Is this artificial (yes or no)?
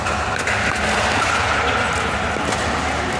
no